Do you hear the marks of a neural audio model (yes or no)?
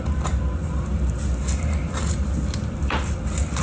no